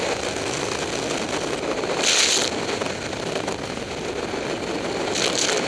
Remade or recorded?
recorded